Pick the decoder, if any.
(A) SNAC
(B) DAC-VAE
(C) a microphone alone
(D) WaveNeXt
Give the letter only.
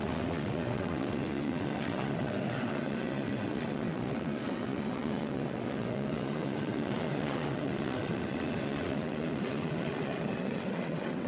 D